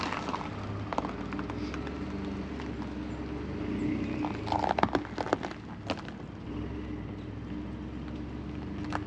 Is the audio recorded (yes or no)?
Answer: yes